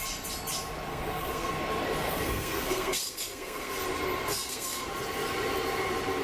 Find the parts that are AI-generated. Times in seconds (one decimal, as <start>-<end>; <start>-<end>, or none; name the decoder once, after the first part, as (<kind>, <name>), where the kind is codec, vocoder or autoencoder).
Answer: 0.9-1.5 (codec, SNAC); 2.0-3.7; 4.3-4.9